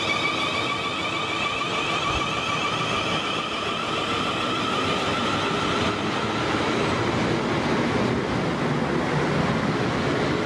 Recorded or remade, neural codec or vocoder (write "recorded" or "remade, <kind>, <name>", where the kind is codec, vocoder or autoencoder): recorded